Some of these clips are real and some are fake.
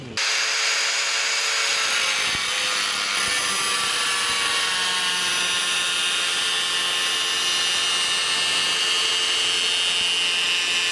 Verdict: real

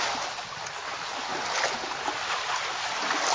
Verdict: real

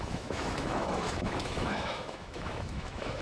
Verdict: fake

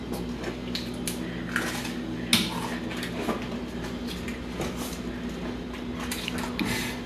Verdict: real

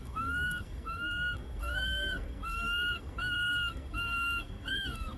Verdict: fake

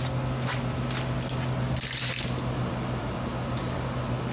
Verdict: real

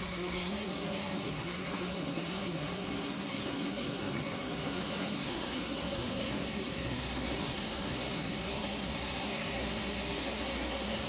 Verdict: fake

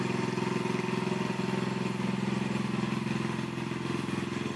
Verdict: real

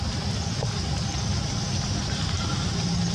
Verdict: real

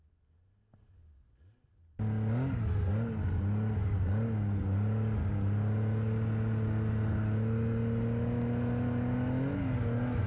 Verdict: real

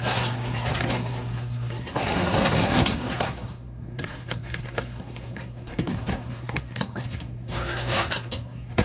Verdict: fake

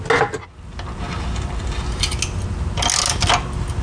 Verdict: real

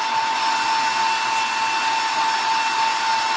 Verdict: real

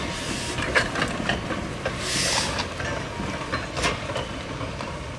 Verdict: real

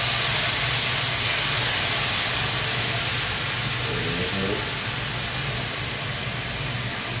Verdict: real